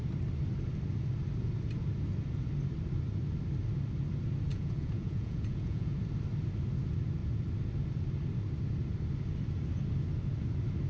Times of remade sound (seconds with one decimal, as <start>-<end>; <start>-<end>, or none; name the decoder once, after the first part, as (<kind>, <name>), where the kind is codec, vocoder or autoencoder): 4.5-6.0 (vocoder, Vocos)